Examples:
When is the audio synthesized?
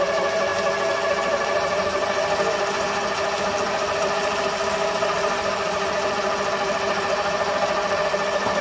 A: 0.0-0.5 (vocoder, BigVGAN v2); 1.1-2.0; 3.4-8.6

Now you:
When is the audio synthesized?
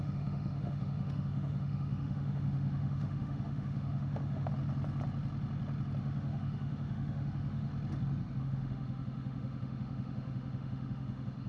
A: 0.0-4.5 (autoencoder, DAC-VAE); 6.0-7.7; 8.4-11.5